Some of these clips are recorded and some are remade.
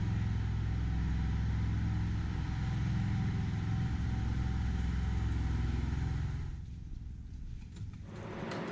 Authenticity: recorded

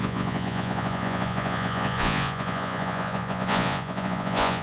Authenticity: remade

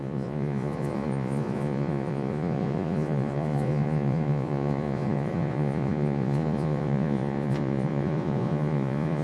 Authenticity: remade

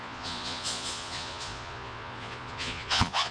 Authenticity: remade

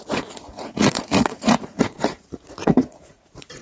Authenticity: remade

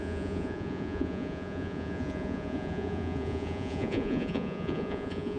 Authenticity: remade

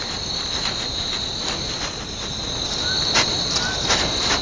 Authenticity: recorded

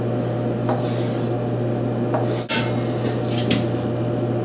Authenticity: recorded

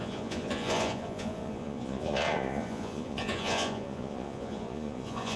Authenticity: remade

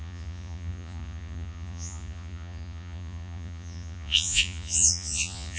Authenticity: remade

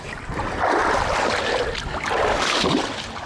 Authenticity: recorded